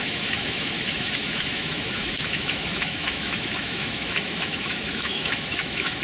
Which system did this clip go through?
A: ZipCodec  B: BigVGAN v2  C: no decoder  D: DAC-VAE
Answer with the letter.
D